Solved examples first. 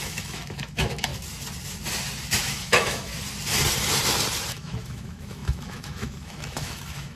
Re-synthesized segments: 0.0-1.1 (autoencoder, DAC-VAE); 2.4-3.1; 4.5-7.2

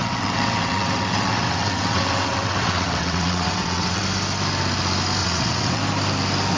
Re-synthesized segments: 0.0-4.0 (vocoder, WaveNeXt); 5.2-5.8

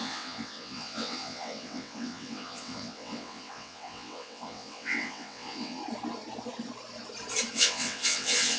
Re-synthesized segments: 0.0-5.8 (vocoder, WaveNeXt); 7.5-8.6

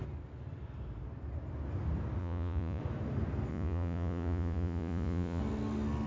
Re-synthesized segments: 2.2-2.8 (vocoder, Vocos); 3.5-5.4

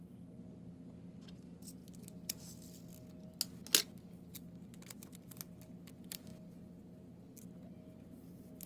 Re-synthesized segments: none

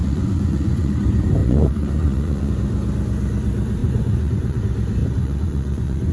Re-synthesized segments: 0.0-1.0 (vocoder, Vocos); 1.4-2.5; 3.8-4.6; 5.0-6.1

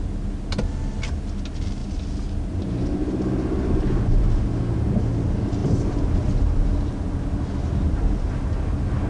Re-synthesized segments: none